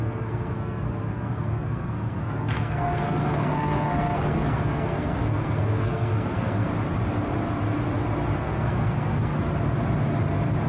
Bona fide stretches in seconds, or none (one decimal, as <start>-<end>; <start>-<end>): 6.7-8.4; 9.3-10.7